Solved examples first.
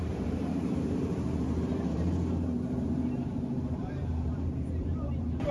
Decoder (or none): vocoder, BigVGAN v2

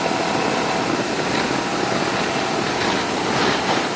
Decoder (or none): none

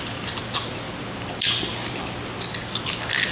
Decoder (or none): none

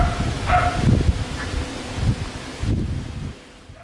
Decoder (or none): none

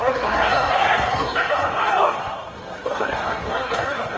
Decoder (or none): codec, SNAC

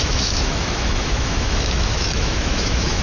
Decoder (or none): autoencoder, DAC-VAE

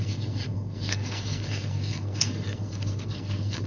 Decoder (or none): codec, SNAC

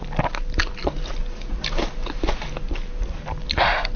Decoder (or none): none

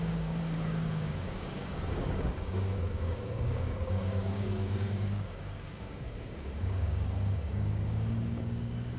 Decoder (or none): codec, DAC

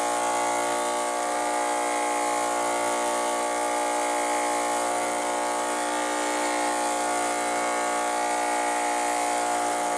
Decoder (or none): none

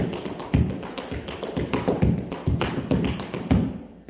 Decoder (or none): none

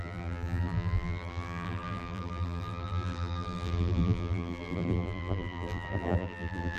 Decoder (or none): vocoder, BigVGAN v2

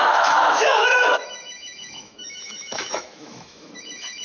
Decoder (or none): autoencoder, DAC-VAE